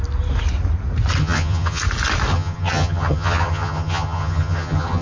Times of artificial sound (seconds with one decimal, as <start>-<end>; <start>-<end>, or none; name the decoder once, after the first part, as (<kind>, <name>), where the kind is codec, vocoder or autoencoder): 1.2-1.8 (vocoder, HiFi-GAN); 2.3-5.0